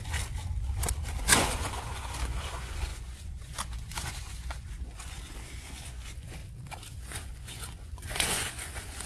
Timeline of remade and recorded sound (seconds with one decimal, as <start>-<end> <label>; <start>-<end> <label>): 0.0-0.4 remade; 0.4-1.2 recorded; 1.2-6.4 remade; 6.4-7.0 recorded; 7.0-9.1 remade